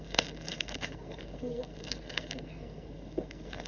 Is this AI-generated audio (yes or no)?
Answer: yes